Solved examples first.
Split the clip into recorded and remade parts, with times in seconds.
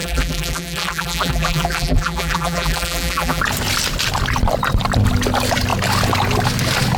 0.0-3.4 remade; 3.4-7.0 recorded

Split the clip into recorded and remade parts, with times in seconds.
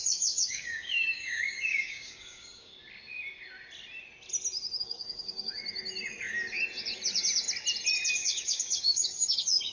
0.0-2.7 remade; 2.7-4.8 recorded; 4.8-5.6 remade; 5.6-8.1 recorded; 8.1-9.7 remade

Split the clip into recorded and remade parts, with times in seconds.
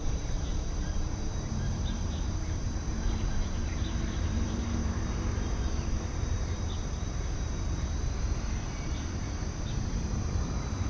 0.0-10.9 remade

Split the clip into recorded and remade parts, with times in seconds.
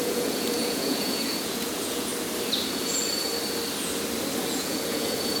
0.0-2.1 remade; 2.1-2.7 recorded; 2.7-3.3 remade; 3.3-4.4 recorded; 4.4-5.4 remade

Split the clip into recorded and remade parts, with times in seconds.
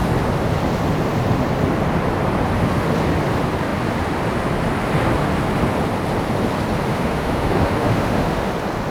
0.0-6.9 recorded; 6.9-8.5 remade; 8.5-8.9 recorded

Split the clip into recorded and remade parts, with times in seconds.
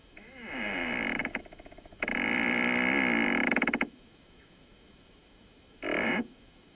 0.0-6.7 remade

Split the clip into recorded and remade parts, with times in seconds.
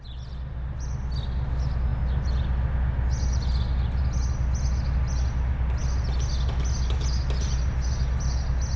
0.0-8.8 recorded